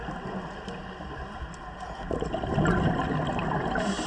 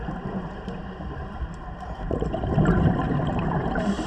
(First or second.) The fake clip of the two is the second